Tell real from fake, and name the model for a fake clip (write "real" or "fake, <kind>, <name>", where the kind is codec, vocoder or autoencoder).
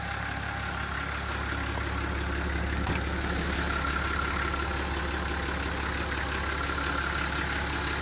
real